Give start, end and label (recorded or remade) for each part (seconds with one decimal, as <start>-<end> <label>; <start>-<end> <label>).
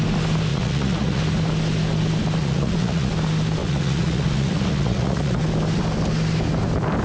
0.0-0.5 recorded; 0.5-1.2 remade; 1.2-2.4 recorded; 2.4-3.1 remade; 3.1-3.6 recorded; 3.6-5.4 remade; 5.4-7.0 recorded